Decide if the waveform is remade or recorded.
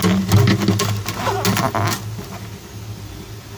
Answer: recorded